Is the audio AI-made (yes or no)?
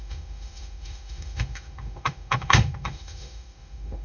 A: yes